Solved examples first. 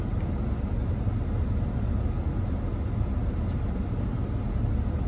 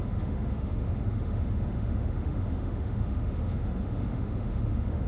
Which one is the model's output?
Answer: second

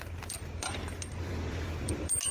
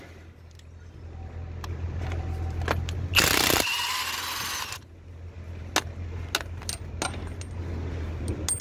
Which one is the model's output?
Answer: first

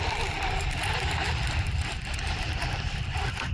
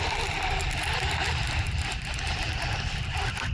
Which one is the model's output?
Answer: first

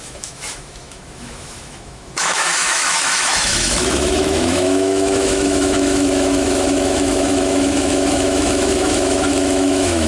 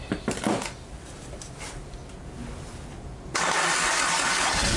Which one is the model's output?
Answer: first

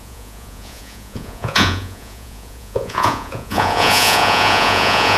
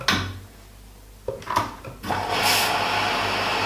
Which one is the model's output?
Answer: first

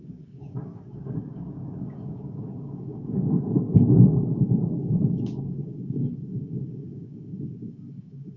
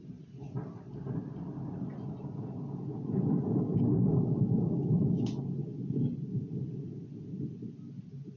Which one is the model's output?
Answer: first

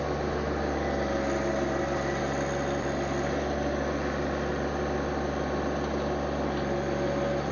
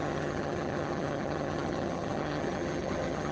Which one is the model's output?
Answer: second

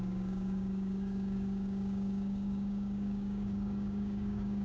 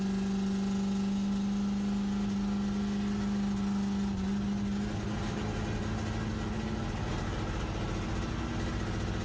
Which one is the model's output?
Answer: first